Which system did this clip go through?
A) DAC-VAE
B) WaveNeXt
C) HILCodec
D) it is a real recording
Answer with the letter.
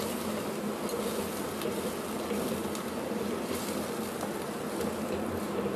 D